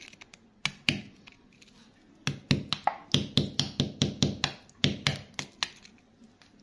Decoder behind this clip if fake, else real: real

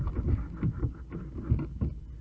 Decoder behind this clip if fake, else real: real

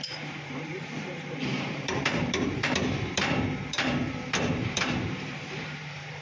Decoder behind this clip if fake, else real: fake, vocoder, BigVGAN v2